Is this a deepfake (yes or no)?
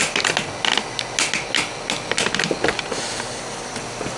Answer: no